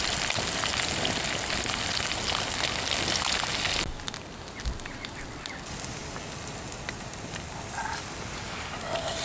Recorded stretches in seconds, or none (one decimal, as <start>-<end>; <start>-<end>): 0.0-9.2